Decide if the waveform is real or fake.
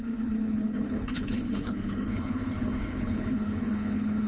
fake